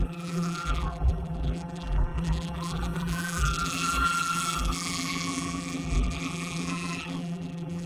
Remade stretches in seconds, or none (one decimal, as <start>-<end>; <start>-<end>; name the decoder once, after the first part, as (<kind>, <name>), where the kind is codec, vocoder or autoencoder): 0.0-7.9 (vocoder, BigVGAN v2)